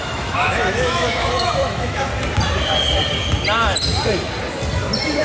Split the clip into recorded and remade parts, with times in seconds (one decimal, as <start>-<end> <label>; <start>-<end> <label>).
0.0-2.1 remade; 2.1-5.2 recorded